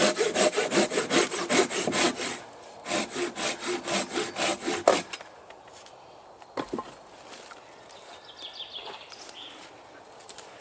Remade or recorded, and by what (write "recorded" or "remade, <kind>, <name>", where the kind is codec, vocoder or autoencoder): recorded